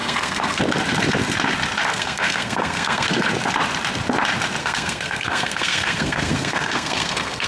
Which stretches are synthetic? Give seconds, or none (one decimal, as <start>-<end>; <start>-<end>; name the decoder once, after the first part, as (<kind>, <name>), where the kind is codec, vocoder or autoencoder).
0.0-0.6 (codec, SNAC); 1.9-3.3; 4.6-7.5

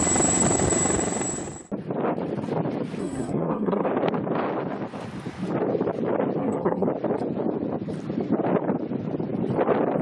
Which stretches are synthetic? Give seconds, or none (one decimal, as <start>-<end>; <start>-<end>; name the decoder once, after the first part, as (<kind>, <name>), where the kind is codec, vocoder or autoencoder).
3.0-3.9 (codec, SNAC); 6.4-6.9

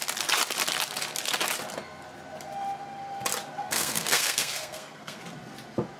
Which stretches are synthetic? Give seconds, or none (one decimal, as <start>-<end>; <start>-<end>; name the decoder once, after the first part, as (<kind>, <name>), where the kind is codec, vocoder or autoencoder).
3.6-5.2 (codec, SNAC)

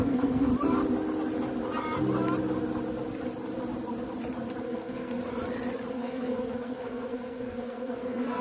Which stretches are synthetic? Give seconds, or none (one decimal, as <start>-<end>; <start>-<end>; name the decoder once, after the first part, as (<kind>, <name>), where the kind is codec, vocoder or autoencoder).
0.0-0.5 (codec, SNAC); 4.6-5.2; 5.9-8.4

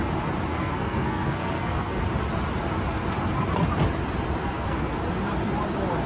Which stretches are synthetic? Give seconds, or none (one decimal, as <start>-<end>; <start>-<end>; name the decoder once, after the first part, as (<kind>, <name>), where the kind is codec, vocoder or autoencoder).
0.5-2.0 (codec, SNAC); 4.4-5.0

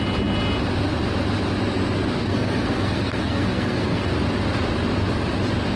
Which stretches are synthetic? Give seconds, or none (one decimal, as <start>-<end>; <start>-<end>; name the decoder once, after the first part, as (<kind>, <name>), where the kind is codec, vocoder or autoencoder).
2.2-4.1 (codec, SNAC)

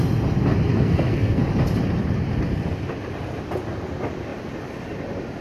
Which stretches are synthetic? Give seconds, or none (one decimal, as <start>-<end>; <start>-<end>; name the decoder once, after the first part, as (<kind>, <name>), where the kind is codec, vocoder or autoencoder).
0.7-1.4 (codec, SNAC)

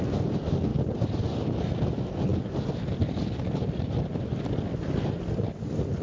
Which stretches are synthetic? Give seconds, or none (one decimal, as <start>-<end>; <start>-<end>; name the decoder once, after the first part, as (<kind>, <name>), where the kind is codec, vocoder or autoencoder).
none